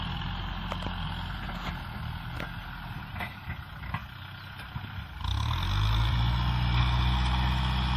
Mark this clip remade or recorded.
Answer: recorded